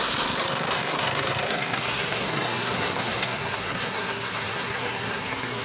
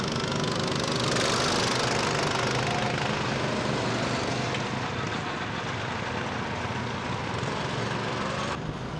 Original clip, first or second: second